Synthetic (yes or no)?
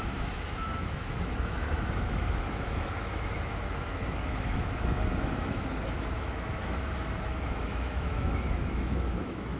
yes